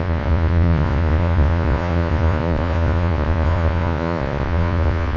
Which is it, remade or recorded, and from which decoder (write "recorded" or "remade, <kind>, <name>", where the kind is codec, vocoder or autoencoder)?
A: remade, vocoder, Vocos